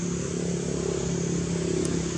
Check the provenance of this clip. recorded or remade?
recorded